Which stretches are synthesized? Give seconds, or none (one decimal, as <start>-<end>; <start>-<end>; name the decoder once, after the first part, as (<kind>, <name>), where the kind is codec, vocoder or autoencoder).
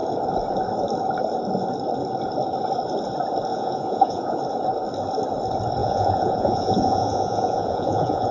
3.5-4.4 (vocoder, Vocos); 5.8-8.3